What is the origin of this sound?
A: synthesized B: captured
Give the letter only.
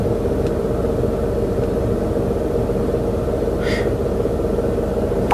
B